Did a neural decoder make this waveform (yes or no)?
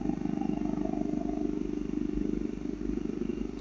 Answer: no